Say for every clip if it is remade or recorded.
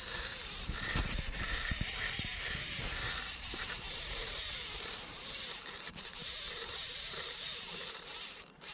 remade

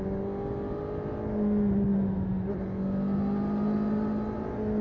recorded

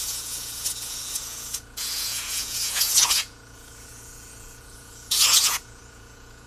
remade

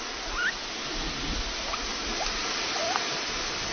recorded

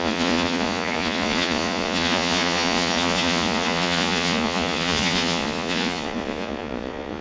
remade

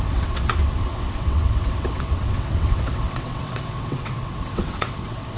remade